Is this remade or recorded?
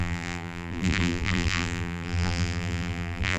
remade